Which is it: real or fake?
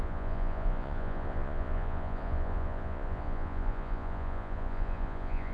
fake